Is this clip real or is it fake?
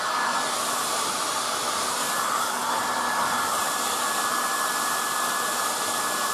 real